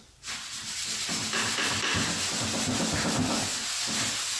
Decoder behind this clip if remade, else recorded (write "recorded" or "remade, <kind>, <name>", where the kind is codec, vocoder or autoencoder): recorded